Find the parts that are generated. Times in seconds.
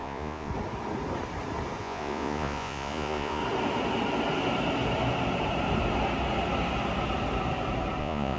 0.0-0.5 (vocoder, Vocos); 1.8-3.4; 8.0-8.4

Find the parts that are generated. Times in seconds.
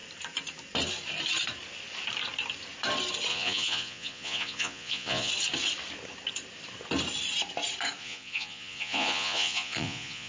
3.3-5.3 (vocoder, Vocos); 8.0-10.3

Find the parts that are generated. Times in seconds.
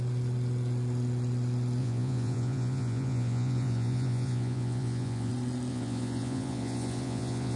1.8-5.3 (vocoder, Vocos); 5.7-7.6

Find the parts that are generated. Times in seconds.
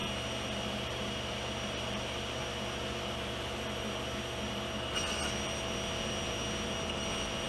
none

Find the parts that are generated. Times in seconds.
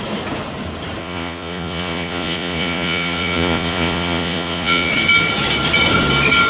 1.0-4.9 (vocoder, Vocos)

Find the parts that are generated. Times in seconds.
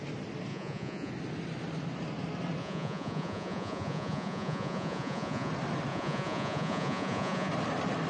0.5-1.1 (vocoder, Vocos); 2.6-5.5; 5.9-7.5